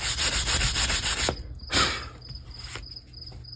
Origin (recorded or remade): recorded